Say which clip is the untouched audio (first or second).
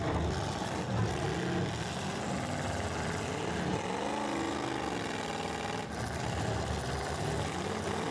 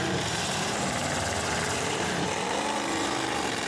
first